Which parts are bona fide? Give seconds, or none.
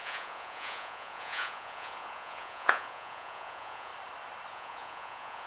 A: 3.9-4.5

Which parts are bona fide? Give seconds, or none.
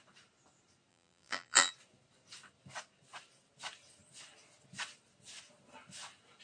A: 0.0-0.9; 1.7-6.4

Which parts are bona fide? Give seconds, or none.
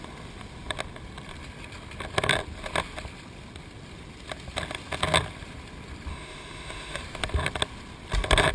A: 0.0-6.1; 7.0-8.5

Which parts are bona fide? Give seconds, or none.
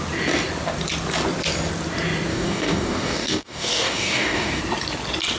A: 0.0-2.3; 4.6-5.4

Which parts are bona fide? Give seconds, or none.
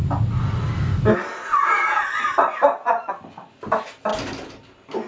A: 0.0-5.1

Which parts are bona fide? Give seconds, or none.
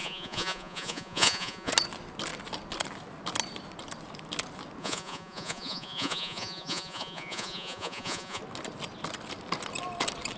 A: 1.7-4.8; 8.4-10.4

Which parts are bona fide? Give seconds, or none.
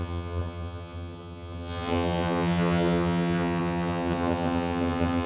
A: none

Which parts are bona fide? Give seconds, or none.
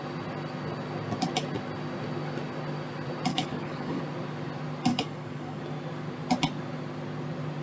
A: 0.0-3.3; 4.0-4.9; 5.6-7.6